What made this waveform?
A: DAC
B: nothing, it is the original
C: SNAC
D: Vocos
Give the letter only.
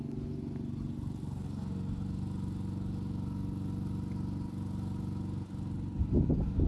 B